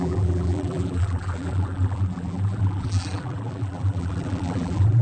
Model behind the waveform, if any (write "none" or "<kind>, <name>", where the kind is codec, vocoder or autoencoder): vocoder, BigVGAN v2